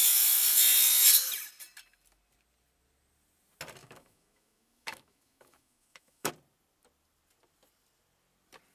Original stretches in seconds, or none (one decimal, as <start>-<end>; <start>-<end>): 0.0-3.8; 6.3-8.7